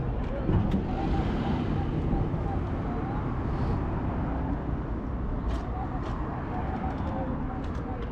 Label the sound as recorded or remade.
recorded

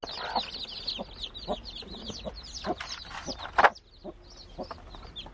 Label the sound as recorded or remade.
recorded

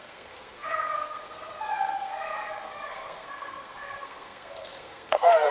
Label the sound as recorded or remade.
remade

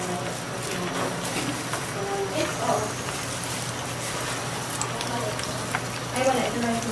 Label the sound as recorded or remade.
recorded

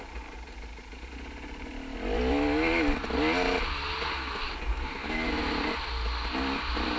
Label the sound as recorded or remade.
recorded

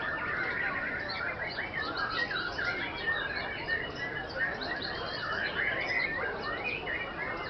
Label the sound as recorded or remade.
recorded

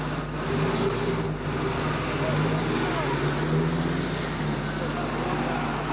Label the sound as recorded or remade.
recorded